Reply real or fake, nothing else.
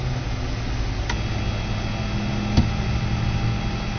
real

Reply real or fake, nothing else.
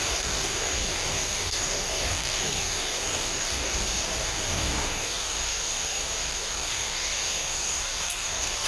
fake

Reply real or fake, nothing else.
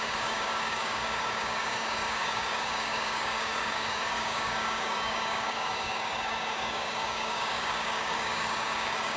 fake